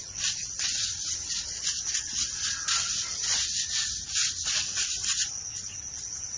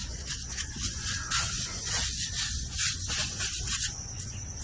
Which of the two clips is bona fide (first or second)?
first